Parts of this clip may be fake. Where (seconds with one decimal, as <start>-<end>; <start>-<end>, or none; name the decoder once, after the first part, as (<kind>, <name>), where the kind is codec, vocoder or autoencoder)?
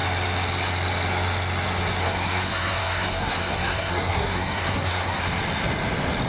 2.0-5.2 (codec, SNAC)